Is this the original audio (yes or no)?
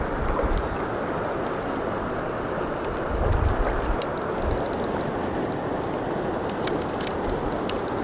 yes